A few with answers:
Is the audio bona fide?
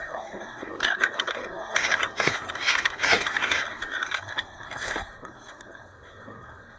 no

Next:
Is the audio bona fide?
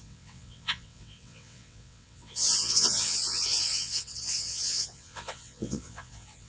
no